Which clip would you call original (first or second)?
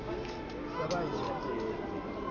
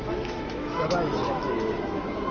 first